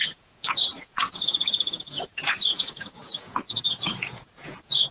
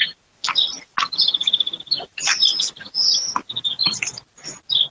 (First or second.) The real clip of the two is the second